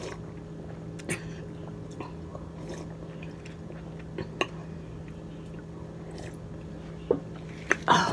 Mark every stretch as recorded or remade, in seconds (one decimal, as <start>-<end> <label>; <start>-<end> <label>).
0.0-8.1 recorded